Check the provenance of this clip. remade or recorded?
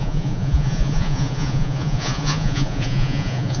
remade